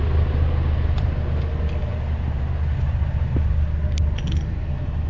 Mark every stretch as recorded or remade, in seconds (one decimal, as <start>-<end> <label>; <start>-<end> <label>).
0.0-5.1 recorded